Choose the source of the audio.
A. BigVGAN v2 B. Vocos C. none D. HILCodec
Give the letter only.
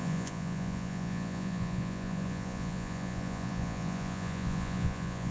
B